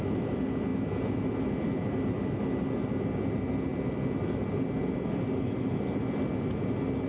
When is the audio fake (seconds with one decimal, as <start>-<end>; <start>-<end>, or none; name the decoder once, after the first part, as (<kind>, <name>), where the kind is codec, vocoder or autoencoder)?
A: none